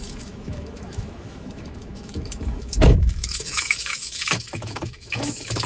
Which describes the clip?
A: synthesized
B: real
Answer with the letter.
A